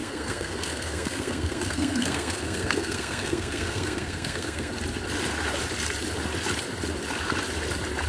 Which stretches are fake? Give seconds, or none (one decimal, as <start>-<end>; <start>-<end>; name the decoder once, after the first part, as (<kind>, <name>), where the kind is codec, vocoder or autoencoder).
0.0-4.7 (codec, SNAC)